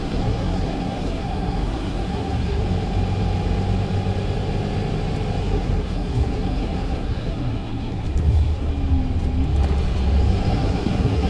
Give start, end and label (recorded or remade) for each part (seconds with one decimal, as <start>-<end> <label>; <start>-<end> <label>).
0.0-2.6 remade; 2.6-5.4 recorded; 5.4-8.7 remade; 8.7-10.5 recorded; 10.5-11.3 remade